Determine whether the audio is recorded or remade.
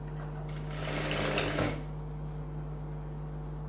recorded